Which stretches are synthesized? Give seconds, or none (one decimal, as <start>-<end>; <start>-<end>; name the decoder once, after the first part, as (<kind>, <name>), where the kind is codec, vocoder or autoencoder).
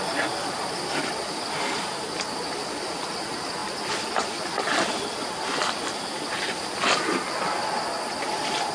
none